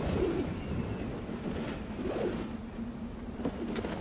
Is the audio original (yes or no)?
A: yes